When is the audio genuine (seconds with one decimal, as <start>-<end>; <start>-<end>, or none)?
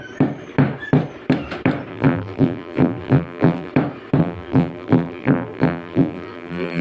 0.0-1.9; 3.7-4.2